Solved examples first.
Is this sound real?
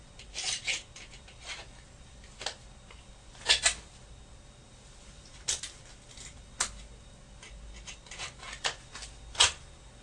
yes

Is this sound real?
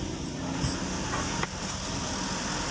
yes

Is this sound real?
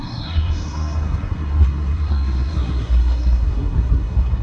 no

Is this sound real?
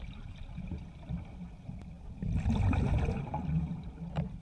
yes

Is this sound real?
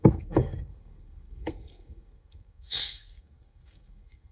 no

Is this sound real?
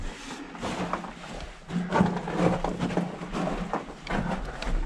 yes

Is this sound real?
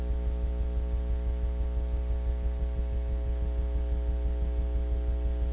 yes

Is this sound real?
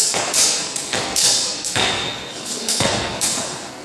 no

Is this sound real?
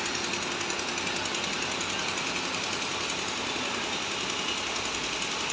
yes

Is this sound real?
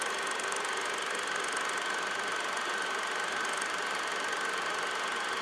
yes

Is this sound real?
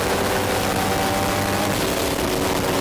yes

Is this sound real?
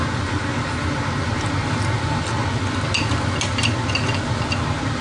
yes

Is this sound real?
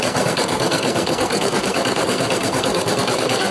no